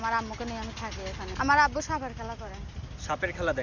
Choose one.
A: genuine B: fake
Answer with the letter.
A